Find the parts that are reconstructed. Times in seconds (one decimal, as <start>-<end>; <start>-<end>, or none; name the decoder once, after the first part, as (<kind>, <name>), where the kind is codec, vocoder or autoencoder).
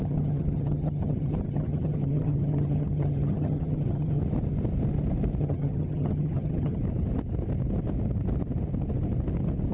0.0-4.2 (vocoder, HiFi-GAN); 5.4-6.8